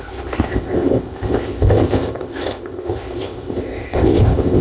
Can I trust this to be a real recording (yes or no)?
no